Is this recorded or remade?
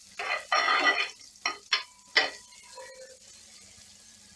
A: recorded